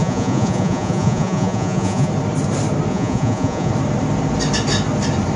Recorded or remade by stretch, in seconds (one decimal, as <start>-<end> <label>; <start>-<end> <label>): 0.0-2.1 remade; 2.1-2.9 recorded; 2.9-3.7 remade; 3.7-5.4 recorded